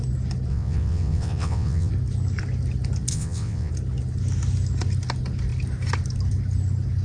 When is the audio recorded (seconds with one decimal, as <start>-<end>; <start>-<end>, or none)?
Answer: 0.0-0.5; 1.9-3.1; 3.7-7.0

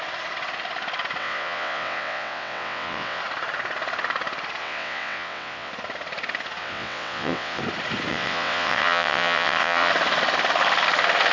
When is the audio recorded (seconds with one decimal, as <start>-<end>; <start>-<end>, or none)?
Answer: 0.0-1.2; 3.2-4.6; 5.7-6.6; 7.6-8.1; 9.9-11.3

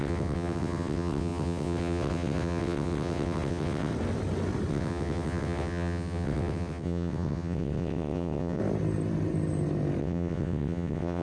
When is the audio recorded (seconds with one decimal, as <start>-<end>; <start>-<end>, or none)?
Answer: 3.9-4.7; 8.6-10.0